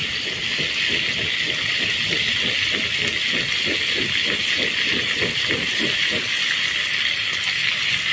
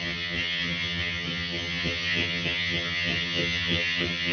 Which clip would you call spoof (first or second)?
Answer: second